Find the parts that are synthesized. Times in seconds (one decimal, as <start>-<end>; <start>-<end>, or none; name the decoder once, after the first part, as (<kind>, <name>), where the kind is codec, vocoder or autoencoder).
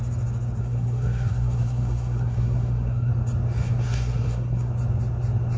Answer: 0.6-3.1 (codec, SNAC); 3.6-4.7